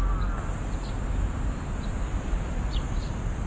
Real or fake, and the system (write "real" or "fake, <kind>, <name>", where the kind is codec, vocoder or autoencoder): real